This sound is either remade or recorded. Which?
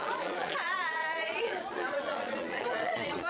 remade